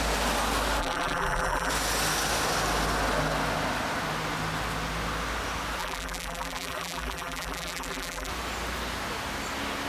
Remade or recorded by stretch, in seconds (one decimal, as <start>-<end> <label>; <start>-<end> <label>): 0.0-0.8 recorded; 0.8-1.7 remade; 1.7-5.8 recorded; 5.8-8.3 remade; 8.3-9.9 recorded